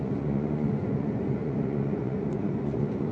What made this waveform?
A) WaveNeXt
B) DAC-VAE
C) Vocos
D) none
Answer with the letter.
C